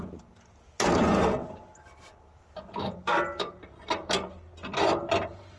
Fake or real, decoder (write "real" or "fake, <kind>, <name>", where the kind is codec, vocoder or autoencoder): real